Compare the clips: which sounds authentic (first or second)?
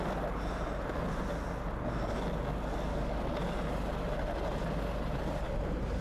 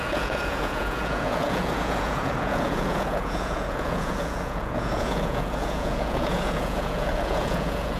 first